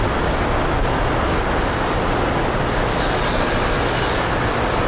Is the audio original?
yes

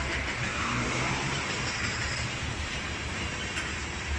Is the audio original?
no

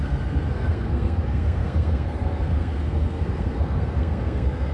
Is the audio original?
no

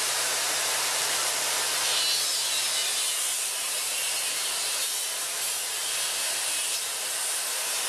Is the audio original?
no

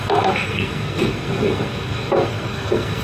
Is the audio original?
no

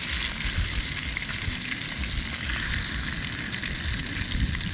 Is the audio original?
yes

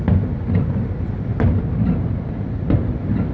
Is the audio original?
yes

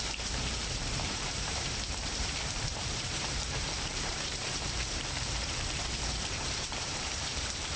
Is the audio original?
no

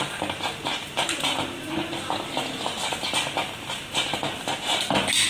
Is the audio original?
yes